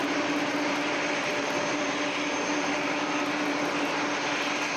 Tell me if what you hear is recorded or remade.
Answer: recorded